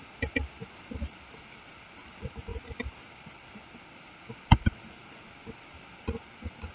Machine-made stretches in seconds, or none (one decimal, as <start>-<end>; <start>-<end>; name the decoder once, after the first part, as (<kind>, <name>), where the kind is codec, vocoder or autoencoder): none